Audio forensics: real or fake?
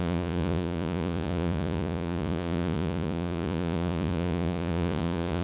fake